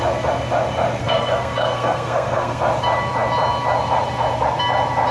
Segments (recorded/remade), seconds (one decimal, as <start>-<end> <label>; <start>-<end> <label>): 0.0-1.0 recorded; 1.0-2.6 remade; 2.6-5.1 recorded